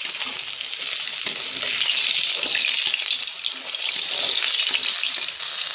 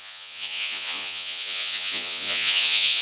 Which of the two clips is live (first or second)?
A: first